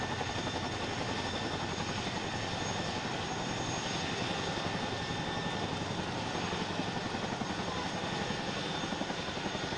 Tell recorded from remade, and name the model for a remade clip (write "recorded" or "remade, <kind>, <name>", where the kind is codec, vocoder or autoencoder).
recorded